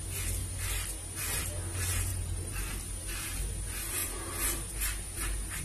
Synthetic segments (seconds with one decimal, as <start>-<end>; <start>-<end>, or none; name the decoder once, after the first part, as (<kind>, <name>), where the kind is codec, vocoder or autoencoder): 2.1-2.8 (vocoder, BigVGAN v2)